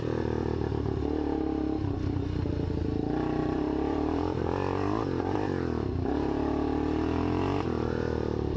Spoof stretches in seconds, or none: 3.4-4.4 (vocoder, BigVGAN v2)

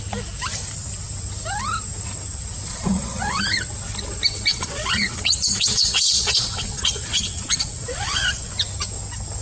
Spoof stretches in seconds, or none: 2.7-3.4 (vocoder, Vocos); 4.5-8.5